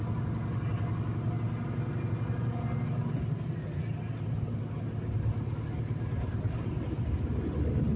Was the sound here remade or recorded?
recorded